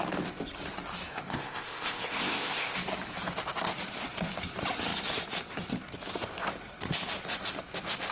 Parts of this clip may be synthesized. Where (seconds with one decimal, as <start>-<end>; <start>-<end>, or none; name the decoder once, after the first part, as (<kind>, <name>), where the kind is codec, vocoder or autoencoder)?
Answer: 1.1-2.8 (codec, ZipCodec)